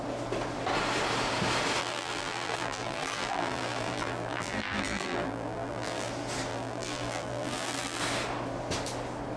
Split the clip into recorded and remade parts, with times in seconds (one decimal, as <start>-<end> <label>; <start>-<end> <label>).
0.0-1.8 recorded; 1.8-6.1 remade; 6.1-6.5 recorded; 6.5-8.0 remade; 8.0-9.4 recorded